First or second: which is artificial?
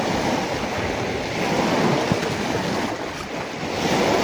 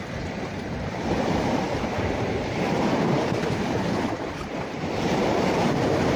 second